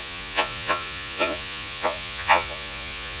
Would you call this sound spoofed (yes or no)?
yes